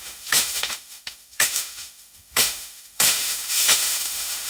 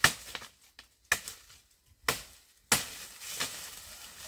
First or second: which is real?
second